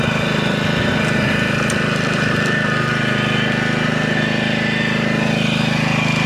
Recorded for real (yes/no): yes